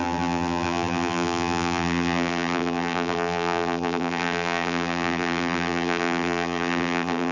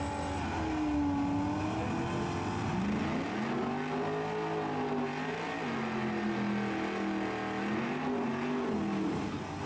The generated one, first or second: first